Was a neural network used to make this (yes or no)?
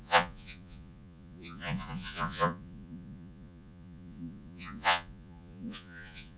yes